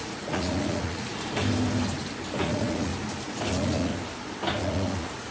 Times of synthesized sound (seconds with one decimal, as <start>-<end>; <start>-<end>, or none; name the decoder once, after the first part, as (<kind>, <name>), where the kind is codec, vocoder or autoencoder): 0.0-1.1 (vocoder, Vocos); 2.4-2.9; 3.5-3.9; 4.6-5.3